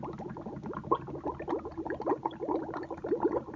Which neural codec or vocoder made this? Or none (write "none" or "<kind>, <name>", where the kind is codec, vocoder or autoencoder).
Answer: none